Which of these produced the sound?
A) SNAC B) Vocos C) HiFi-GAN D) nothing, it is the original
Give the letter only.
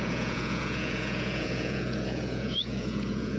B